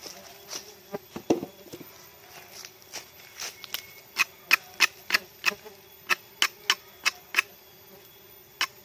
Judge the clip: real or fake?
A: real